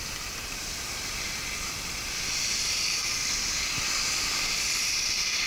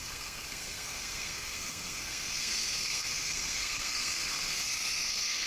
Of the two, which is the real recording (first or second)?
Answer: first